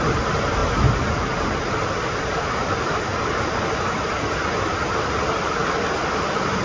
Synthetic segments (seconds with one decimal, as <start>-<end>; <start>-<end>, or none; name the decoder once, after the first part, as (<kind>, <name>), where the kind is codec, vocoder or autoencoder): 0.0-0.6 (vocoder, BigVGAN v2); 2.3-3.1; 4.1-6.6